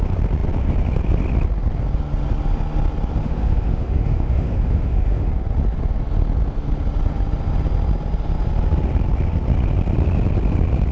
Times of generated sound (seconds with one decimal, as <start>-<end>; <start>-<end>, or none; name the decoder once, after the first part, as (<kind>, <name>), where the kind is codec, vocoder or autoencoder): 3.2-5.3 (autoencoder, DAC-VAE)